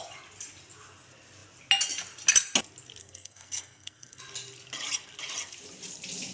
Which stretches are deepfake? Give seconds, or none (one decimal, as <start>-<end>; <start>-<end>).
3.0-4.2